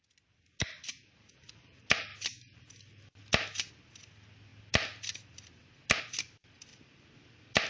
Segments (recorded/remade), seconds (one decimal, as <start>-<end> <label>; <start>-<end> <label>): 0.0-7.7 recorded